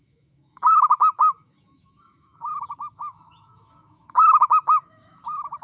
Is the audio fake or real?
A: fake